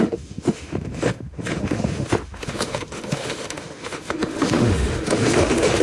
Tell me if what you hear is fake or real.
fake